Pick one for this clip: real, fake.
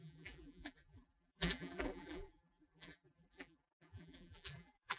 fake